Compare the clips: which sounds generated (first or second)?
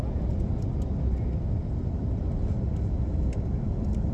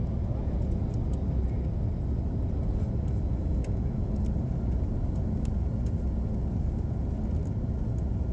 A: first